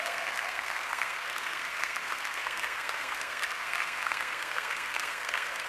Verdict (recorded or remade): remade